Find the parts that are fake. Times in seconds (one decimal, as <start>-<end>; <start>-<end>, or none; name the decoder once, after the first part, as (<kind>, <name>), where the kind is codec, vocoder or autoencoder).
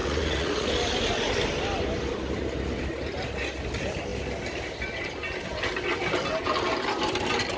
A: 0.0-0.7 (vocoder, Vocos)